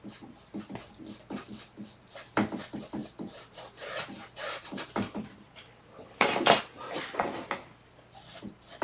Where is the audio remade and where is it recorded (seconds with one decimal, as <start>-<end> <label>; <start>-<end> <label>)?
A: 0.0-3.0 recorded; 3.0-6.6 remade; 6.6-8.8 recorded